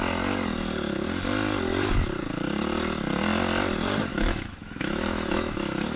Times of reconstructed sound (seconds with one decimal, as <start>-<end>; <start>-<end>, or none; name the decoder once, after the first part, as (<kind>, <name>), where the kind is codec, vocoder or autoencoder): 4.1-6.0 (autoencoder, DAC-VAE)